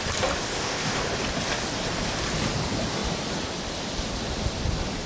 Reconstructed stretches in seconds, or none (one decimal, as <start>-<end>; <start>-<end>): 0.4-1.0